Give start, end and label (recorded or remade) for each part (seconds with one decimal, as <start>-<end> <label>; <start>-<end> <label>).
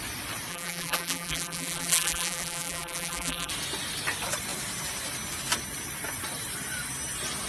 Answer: 0.0-0.5 recorded; 0.5-3.5 remade; 3.5-7.5 recorded